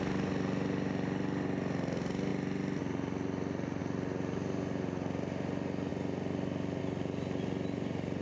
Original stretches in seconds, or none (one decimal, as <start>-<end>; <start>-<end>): 0.0-8.2